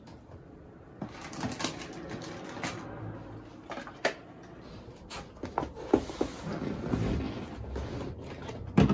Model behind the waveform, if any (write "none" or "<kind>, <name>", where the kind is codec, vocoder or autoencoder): none